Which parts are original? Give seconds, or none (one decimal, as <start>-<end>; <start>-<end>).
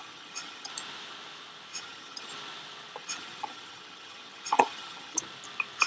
0.7-1.7; 2.3-3.0; 5.2-5.9